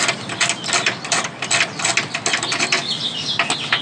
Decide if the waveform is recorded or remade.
recorded